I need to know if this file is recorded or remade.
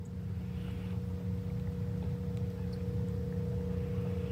recorded